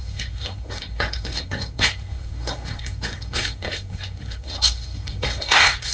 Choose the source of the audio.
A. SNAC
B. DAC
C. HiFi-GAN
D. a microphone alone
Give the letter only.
A